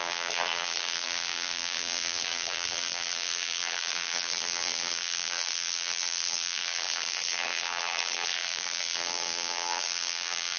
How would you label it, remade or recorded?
remade